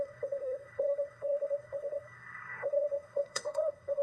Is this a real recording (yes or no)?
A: no